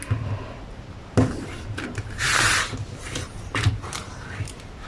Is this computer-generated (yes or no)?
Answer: no